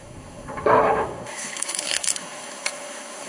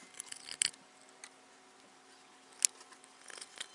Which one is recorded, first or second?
second